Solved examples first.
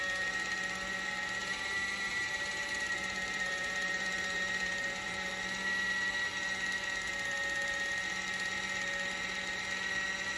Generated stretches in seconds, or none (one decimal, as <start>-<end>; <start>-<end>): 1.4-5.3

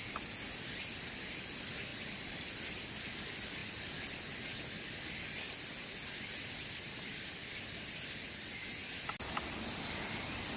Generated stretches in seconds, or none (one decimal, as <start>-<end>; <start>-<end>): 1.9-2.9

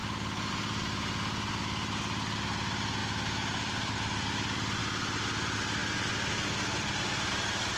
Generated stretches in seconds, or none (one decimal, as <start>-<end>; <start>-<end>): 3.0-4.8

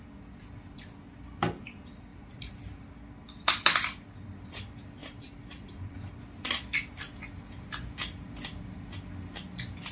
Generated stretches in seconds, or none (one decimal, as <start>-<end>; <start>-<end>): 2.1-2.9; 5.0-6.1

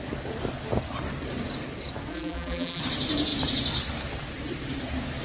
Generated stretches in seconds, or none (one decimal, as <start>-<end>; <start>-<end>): 2.1-2.8